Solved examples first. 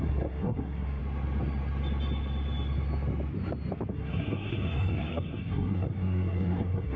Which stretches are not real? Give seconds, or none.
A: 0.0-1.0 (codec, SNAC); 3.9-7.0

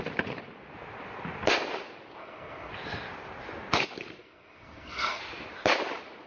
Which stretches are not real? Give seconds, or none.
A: 2.2-2.7 (codec, SNAC); 4.2-5.2

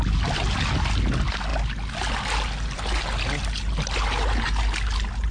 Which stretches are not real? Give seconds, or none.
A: none